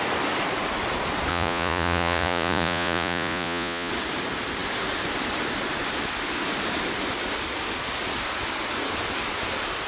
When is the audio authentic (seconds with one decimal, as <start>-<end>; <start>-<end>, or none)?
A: 0.0-1.3; 3.9-9.9